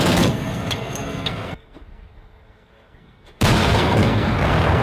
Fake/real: fake